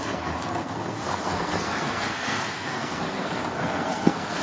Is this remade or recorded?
remade